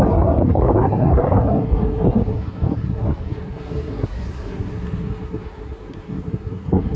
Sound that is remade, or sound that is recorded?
remade